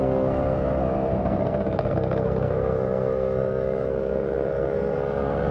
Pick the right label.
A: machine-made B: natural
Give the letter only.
A